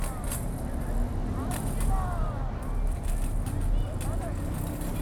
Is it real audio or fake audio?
real